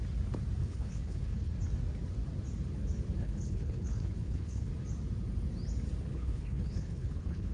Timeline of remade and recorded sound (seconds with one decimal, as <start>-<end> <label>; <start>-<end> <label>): 0.0-0.6 recorded; 0.6-1.5 remade; 1.5-3.2 recorded; 3.2-4.7 remade; 4.7-6.1 recorded; 6.1-7.5 remade